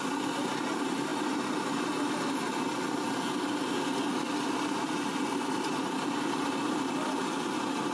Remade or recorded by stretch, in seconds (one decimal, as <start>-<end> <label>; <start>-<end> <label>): 0.0-5.1 recorded; 5.1-7.2 remade; 7.2-7.9 recorded